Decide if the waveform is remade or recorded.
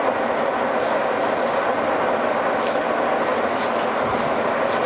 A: recorded